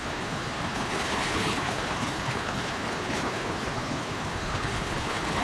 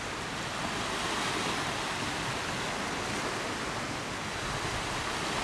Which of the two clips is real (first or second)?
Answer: second